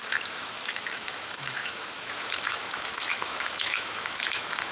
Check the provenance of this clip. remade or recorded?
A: remade